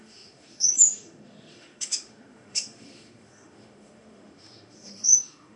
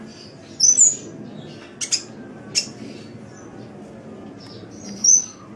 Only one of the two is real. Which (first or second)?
second